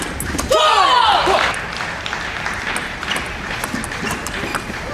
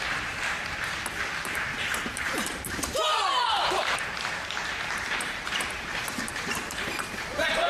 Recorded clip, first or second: first